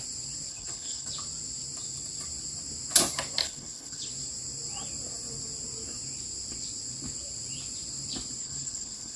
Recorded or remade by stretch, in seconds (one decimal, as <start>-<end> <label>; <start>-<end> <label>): 0.0-0.5 recorded; 0.5-1.1 remade; 1.1-3.4 recorded; 3.4-4.1 remade; 4.1-8.4 recorded; 8.4-9.2 remade